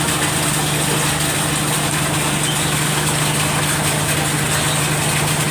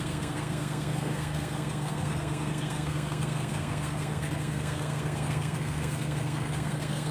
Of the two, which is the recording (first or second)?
first